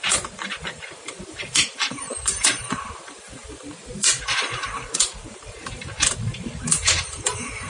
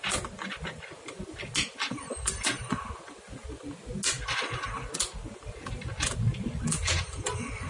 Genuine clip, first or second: second